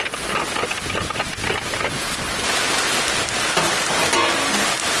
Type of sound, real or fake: real